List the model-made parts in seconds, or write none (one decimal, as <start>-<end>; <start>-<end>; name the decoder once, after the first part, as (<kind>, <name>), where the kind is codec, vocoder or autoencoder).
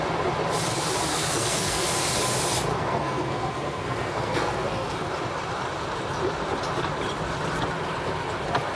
1.1-1.9 (codec, SNAC); 2.7-5.1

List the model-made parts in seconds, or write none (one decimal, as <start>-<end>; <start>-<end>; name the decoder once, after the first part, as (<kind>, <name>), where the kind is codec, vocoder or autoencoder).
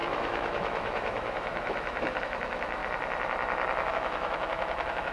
0.0-2.8 (autoencoder, DAC-VAE); 3.9-5.1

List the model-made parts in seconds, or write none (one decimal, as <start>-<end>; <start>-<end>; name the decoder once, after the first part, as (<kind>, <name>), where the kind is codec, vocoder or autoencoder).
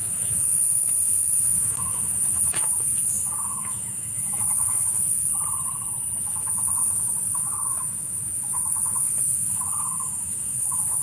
0.0-5.3 (autoencoder, DAC-VAE); 6.2-11.0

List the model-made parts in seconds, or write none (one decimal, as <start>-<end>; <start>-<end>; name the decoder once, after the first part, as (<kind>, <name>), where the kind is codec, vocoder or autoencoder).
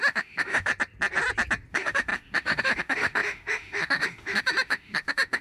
0.0-0.7 (autoencoder, DAC-VAE); 1.7-5.4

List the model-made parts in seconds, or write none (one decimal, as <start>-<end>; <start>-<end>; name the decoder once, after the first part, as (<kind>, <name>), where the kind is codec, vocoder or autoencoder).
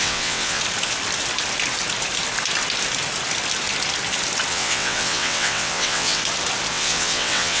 0.0-0.6 (vocoder, WaveNeXt); 4.5-6.2; 6.7-7.6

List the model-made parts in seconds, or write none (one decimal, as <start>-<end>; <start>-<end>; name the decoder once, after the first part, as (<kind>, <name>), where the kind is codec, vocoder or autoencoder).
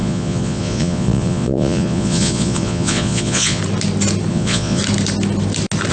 0.0-3.6 (vocoder, Vocos); 4.3-4.8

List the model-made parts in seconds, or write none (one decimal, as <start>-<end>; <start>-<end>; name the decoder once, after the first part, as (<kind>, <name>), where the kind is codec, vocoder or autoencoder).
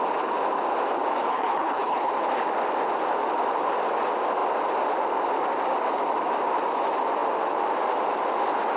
1.3-2.1 (codec, HILCodec)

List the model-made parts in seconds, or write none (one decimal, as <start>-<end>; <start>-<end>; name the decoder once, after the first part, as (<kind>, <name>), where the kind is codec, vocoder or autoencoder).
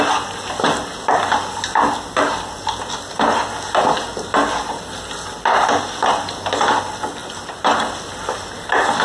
none